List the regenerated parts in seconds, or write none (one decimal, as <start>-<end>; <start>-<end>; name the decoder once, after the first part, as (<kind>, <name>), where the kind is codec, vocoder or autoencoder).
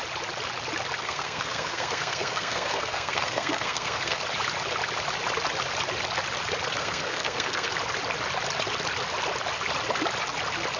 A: 1.0-4.2 (codec, SNAC); 6.8-7.7